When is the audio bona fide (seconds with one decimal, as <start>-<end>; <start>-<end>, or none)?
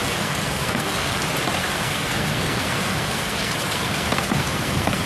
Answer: 1.2-1.6